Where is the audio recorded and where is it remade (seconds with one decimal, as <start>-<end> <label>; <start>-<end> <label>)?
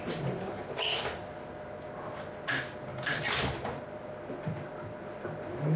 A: 0.0-2.9 recorded; 2.9-4.1 remade; 4.1-5.8 recorded